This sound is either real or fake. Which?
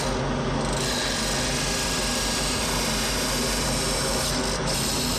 real